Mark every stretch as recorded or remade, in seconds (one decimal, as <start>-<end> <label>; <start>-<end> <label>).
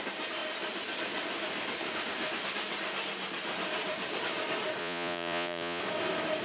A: 0.0-4.8 recorded; 4.8-5.8 remade; 5.8-6.4 recorded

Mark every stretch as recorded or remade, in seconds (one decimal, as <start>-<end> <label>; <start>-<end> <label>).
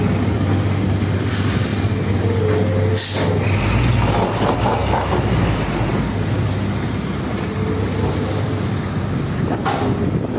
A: 0.0-10.4 recorded